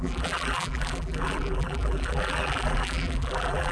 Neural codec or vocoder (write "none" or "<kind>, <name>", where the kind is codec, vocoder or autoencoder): vocoder, BigVGAN v2